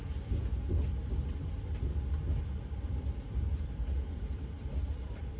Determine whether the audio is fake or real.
real